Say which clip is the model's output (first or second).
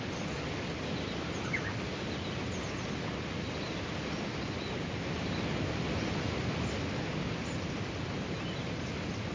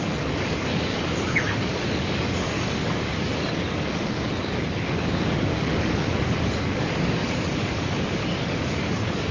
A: second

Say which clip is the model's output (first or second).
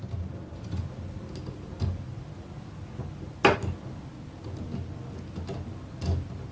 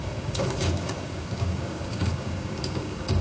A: second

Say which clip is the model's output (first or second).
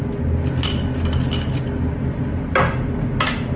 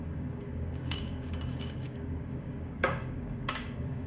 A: second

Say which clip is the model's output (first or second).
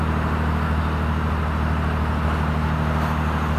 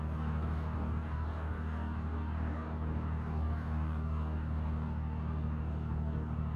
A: second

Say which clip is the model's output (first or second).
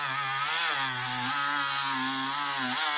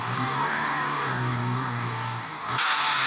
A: second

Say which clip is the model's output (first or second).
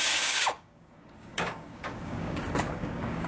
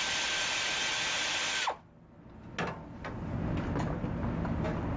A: first